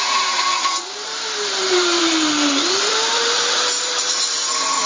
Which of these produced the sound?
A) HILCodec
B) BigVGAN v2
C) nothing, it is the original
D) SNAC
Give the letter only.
B